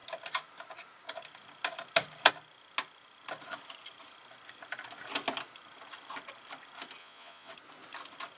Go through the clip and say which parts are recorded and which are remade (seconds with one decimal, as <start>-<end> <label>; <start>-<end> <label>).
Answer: 0.0-7.0 recorded; 7.0-7.5 remade; 7.5-8.4 recorded